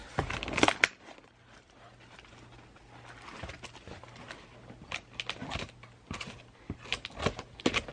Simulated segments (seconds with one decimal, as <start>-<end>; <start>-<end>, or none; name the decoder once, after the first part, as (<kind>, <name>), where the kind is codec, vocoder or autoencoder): 0.0-2.3 (vocoder, BigVGAN v2)